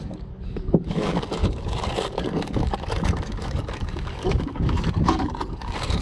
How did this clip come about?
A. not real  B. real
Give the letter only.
A